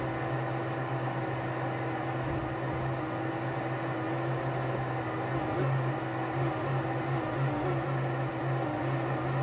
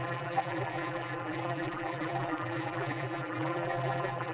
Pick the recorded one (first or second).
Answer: first